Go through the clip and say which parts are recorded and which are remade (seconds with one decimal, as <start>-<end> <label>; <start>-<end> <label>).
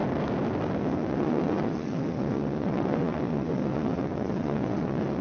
0.0-0.8 recorded; 0.8-5.2 remade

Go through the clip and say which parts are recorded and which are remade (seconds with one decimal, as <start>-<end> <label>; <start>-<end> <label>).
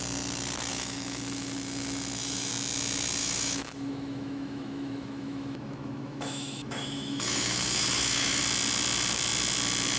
0.0-0.7 recorded; 0.7-2.5 remade; 2.5-3.2 recorded; 3.2-8.4 remade; 8.4-10.0 recorded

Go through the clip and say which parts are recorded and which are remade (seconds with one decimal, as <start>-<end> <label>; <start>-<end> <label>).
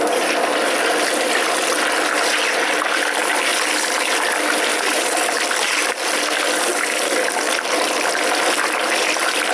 0.0-9.5 recorded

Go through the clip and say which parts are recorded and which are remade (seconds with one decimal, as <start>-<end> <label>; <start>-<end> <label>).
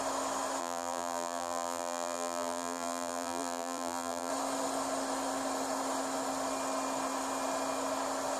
0.0-0.6 recorded; 0.6-4.3 remade; 4.3-8.4 recorded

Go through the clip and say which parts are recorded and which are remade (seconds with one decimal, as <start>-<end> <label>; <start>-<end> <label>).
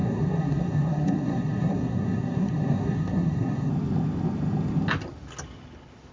0.0-3.7 remade; 3.7-6.1 recorded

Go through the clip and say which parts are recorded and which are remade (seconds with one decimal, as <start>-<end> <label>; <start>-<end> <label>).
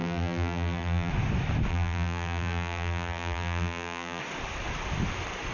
0.0-1.1 remade; 1.1-1.7 recorded; 1.7-4.2 remade; 4.2-5.5 recorded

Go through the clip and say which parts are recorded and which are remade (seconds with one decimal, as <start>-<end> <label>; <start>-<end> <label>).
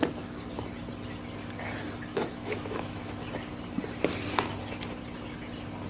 0.0-2.1 recorded; 2.1-3.1 remade; 3.1-5.9 recorded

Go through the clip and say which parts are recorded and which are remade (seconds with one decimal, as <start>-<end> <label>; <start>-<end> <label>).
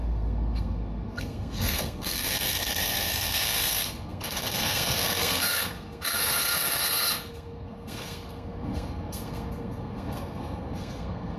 0.0-11.4 remade